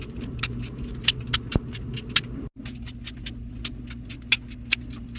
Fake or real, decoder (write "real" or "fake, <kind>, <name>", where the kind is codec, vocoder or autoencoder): real